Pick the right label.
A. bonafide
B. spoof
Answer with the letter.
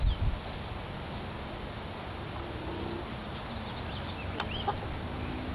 A